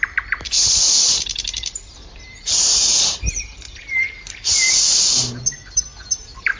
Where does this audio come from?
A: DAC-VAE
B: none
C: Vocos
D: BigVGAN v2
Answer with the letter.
D